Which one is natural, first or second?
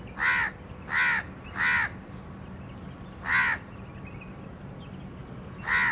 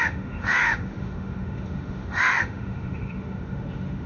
first